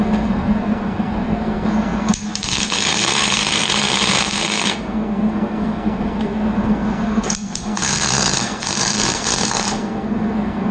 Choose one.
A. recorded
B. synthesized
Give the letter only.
B